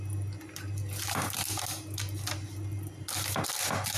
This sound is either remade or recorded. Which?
recorded